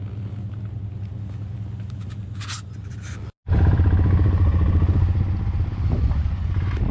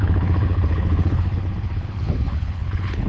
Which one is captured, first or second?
first